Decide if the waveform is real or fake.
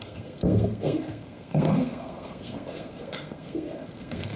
fake